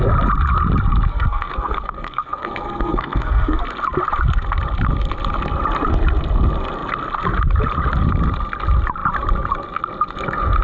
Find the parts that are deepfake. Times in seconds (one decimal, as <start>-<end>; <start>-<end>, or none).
1.1-3.6